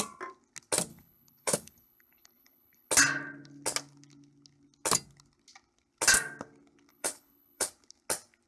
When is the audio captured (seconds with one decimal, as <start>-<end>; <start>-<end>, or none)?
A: 0.0-0.9; 2.9-6.9; 7.7-8.5